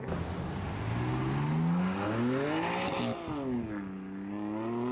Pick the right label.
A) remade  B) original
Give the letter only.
B